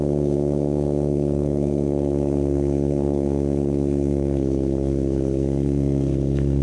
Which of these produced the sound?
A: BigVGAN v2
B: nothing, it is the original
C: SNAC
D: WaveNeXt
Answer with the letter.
C